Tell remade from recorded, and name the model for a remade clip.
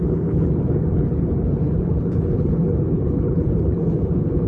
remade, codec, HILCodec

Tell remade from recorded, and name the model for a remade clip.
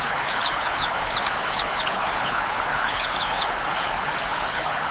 remade, codec, HILCodec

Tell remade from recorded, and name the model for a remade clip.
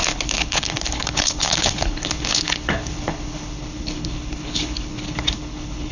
remade, codec, HILCodec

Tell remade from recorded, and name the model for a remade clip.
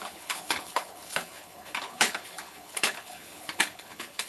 remade, codec, HILCodec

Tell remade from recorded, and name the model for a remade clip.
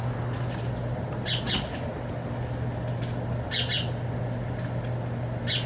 recorded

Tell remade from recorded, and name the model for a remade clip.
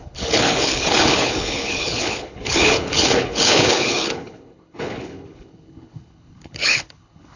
remade, codec, HILCodec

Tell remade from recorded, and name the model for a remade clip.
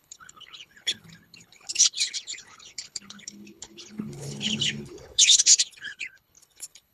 remade, codec, HILCodec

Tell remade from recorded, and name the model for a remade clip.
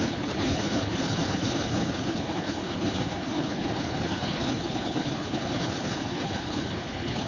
remade, codec, HILCodec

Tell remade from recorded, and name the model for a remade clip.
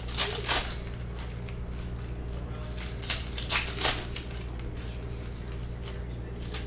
recorded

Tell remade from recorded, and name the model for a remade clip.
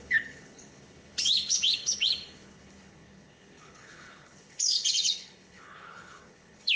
remade, codec, HILCodec